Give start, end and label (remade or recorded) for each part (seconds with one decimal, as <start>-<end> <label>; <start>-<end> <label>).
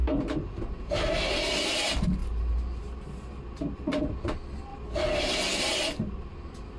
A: 0.0-2.2 recorded; 2.2-2.8 remade; 2.8-6.8 recorded